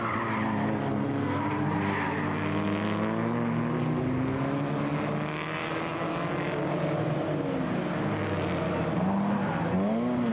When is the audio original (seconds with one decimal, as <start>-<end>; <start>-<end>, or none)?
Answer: 0.0-10.3